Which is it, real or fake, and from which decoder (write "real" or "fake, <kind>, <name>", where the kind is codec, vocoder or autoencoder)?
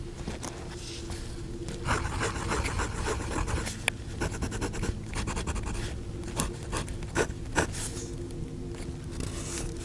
real